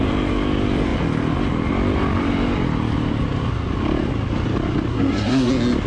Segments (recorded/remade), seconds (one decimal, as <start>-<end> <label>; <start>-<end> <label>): 0.0-4.9 recorded; 4.9-5.5 remade; 5.5-5.9 recorded

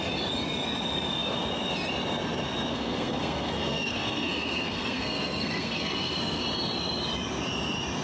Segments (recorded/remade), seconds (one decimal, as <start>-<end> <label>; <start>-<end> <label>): 0.0-2.7 recorded; 2.7-6.4 remade; 6.4-8.0 recorded

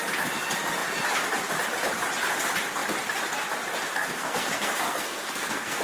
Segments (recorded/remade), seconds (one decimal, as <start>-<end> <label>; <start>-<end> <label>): 0.0-4.0 recorded; 4.0-5.8 remade

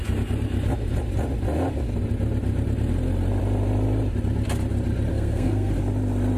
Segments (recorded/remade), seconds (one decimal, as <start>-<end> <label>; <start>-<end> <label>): 0.0-5.1 recorded; 5.1-5.7 remade; 5.7-6.4 recorded

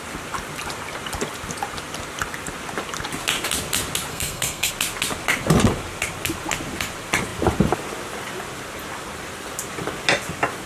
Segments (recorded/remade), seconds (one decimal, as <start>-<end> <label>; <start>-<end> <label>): 0.0-4.1 recorded; 4.1-4.7 remade; 4.7-10.7 recorded

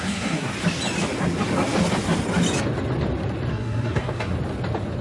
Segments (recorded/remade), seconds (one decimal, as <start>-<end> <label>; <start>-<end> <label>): 0.0-0.5 remade; 0.5-3.5 recorded; 3.5-4.3 remade; 4.3-5.0 recorded